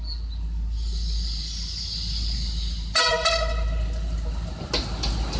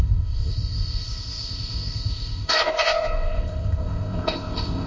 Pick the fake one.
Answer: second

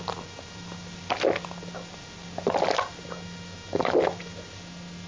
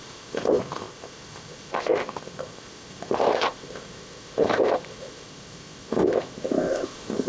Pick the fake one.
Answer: second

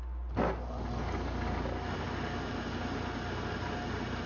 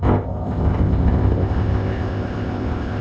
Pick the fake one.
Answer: second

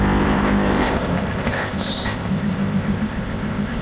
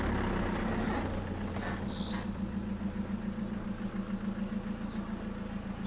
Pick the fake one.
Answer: first